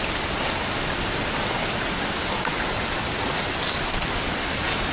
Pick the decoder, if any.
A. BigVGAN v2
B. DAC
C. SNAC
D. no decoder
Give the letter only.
D